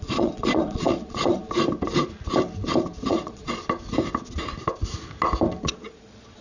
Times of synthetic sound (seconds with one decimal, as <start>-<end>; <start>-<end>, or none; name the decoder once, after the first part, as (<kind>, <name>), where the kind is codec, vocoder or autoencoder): 0.0-1.4 (vocoder, Vocos); 3.1-3.6; 5.6-6.4